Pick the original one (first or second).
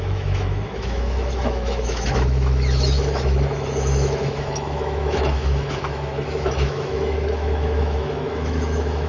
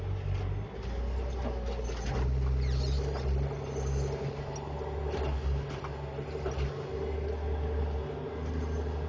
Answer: second